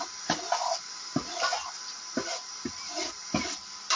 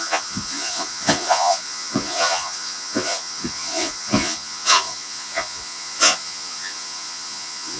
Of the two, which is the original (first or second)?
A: first